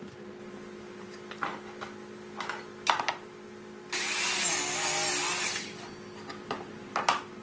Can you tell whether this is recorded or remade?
recorded